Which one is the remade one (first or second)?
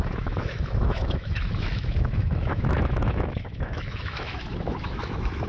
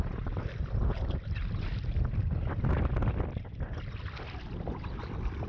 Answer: first